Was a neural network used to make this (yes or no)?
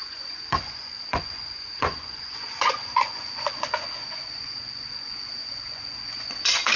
yes